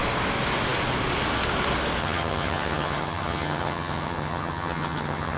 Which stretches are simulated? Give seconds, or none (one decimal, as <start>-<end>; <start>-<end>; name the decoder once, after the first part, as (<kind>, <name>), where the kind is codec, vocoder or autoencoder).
2.0-5.4 (vocoder, HiFi-GAN)